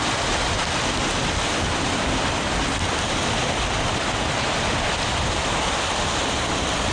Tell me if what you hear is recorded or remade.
remade